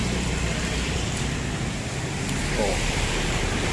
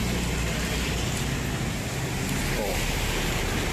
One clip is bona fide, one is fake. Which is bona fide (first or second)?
second